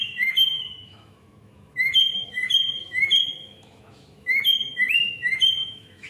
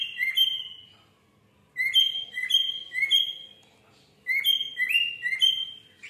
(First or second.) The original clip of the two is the second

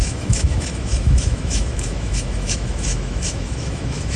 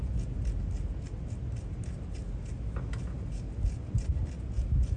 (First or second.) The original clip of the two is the second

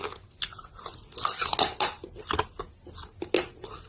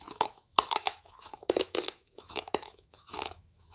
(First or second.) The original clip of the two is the first